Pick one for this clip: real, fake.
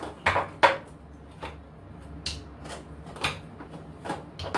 real